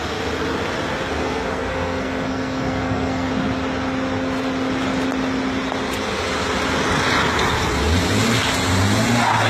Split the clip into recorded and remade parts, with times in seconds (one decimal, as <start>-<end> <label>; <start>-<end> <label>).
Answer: 0.0-1.2 recorded; 1.2-3.3 remade; 3.3-9.5 recorded